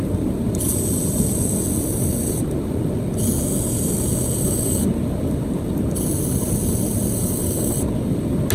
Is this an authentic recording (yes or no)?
yes